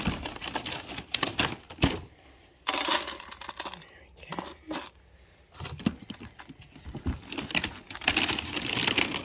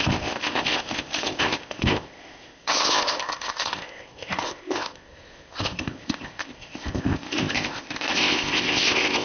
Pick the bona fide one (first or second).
first